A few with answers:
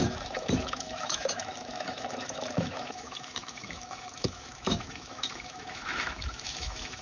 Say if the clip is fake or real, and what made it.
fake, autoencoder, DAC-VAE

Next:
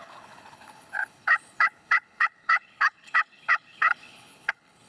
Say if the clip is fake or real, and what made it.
fake, codec, HILCodec